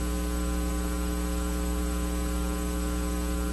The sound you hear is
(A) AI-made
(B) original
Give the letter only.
B